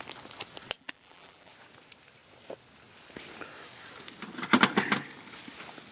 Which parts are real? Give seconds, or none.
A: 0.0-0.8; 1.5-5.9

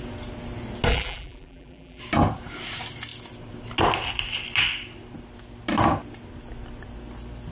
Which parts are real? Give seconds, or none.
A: 0.0-0.9; 2.0-7.5

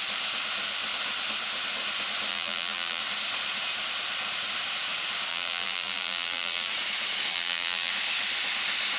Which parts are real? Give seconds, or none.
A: 0.0-2.3; 3.0-5.3; 6.7-7.3; 7.9-9.0

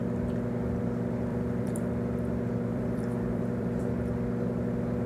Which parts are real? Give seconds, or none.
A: 0.0-1.3; 1.9-2.7; 3.9-5.1

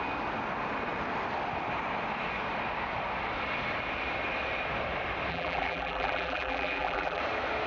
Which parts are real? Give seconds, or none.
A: 0.0-5.3; 7.2-7.7

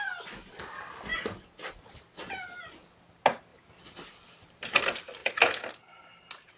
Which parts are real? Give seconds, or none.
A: 0.0-3.5; 4.8-6.6

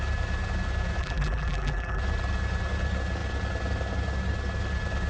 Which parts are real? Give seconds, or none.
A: 0.0-1.0; 2.0-5.1

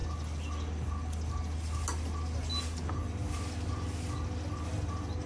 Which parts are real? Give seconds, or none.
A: 0.0-5.3